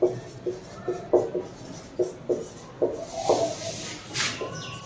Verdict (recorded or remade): recorded